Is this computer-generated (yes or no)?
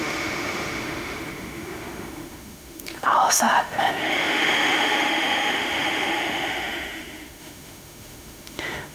yes